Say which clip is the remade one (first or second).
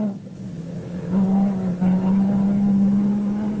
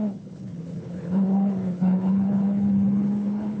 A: second